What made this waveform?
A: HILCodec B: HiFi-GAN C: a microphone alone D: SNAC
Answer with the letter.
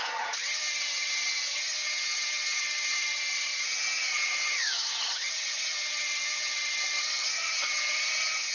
B